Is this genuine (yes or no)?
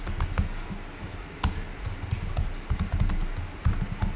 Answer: yes